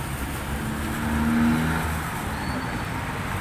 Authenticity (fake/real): real